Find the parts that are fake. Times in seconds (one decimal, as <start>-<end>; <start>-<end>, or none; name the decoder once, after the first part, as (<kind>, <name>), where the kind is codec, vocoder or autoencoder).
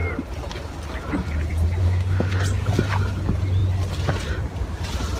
1.8-2.4 (autoencoder, DAC-VAE)